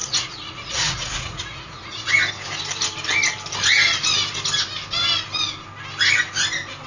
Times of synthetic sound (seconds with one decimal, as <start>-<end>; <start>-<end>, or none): 0.0-2.1